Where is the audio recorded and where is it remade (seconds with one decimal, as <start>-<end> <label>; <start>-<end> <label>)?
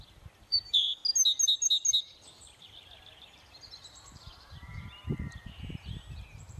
0.0-1.0 remade; 1.0-2.0 recorded; 2.0-6.6 remade